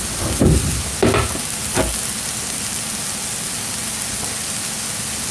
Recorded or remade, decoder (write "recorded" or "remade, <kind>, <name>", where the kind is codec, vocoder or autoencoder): recorded